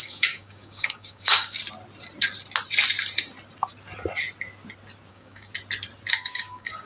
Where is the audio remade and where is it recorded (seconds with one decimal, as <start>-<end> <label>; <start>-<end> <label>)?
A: 0.0-1.6 remade; 1.6-5.1 recorded; 5.1-5.5 remade; 5.5-6.1 recorded; 6.1-6.9 remade

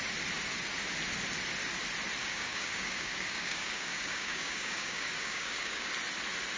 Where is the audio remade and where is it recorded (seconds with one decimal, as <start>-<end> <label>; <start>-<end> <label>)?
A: 0.0-2.2 recorded; 2.2-5.9 remade; 5.9-6.6 recorded